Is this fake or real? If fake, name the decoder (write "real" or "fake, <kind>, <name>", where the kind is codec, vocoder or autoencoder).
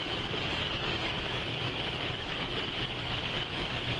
fake, codec, DAC